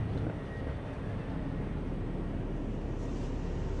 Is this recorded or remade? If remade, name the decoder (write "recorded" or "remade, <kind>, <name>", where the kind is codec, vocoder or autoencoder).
recorded